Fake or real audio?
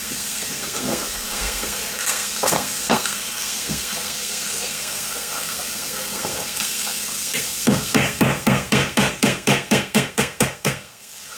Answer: fake